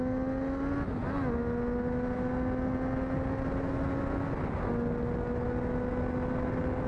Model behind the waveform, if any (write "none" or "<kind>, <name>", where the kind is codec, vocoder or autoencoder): none